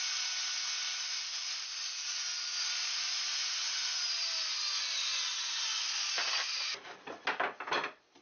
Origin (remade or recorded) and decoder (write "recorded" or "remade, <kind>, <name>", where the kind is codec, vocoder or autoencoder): recorded